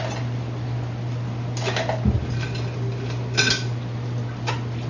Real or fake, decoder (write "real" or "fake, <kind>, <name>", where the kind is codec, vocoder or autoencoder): real